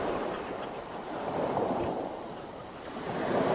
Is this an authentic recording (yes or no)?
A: no